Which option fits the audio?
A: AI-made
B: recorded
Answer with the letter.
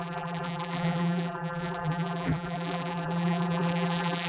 A